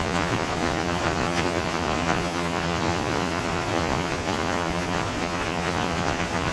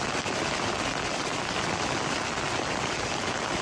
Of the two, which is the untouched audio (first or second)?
second